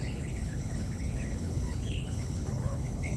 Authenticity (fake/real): fake